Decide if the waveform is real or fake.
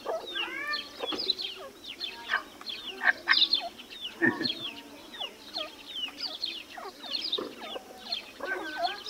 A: real